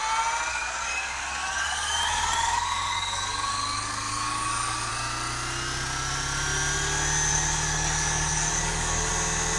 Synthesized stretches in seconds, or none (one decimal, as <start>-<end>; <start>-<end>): 0.5-4.9; 7.3-9.1